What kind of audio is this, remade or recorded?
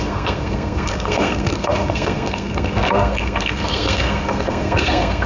remade